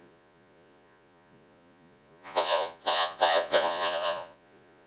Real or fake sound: fake